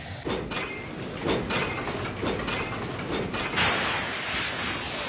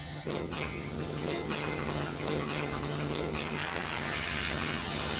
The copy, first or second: second